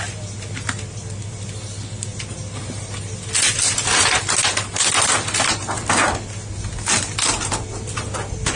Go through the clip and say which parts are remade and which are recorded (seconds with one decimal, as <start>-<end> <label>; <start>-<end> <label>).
0.0-8.6 recorded